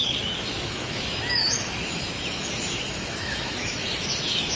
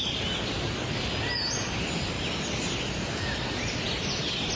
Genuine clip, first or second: second